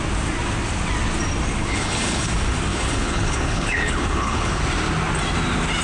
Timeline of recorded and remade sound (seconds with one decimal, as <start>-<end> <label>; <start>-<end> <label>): 0.0-1.6 recorded; 1.6-2.3 remade; 2.3-2.7 recorded; 2.7-4.6 remade; 4.6-5.8 recorded